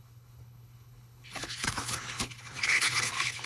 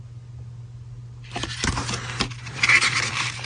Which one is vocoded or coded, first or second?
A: first